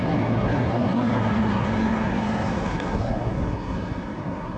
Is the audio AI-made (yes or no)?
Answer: yes